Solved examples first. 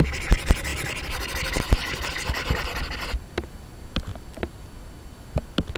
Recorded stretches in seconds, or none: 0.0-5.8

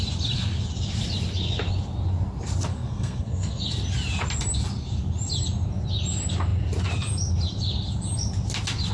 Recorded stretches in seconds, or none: 0.0-2.7; 3.6-8.9

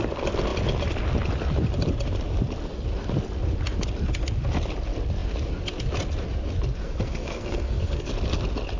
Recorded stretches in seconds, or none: 0.0-6.8; 8.1-8.8